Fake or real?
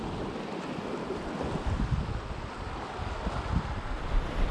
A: real